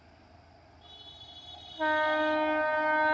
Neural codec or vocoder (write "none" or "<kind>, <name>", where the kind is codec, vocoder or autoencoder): none